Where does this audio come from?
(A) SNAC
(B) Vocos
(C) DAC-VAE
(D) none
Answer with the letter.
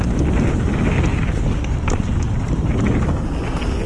D